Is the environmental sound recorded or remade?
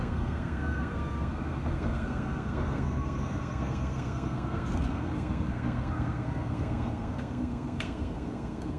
remade